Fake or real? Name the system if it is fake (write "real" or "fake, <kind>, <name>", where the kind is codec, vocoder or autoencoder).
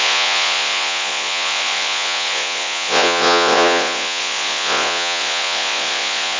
fake, vocoder, Vocos